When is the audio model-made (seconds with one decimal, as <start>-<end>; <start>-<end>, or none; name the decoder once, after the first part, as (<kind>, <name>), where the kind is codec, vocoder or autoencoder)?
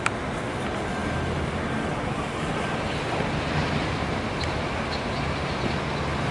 none